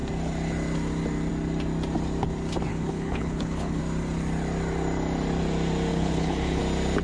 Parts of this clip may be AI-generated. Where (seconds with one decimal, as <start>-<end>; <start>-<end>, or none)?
2.7-3.8; 5.9-6.6